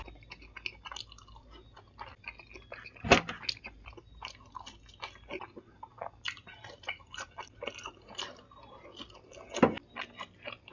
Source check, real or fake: real